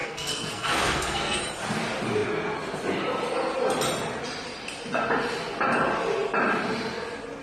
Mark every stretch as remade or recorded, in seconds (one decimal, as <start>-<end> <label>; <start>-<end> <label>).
0.0-1.4 remade; 1.4-7.4 recorded